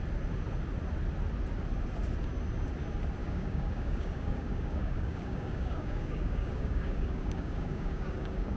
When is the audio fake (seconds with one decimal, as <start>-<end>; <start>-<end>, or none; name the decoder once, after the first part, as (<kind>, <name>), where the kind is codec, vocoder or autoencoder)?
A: 3.2-8.6 (codec, DAC)